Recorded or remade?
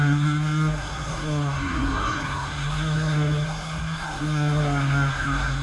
remade